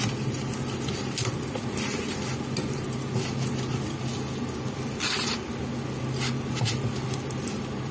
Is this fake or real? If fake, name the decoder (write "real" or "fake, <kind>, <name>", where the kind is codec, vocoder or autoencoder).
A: real